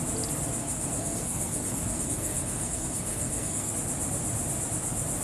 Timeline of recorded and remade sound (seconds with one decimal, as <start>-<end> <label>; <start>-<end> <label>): 0.0-0.6 recorded; 0.6-3.7 remade; 3.7-5.2 recorded